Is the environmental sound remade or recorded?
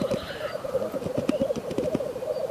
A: recorded